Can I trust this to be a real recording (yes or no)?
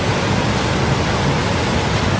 yes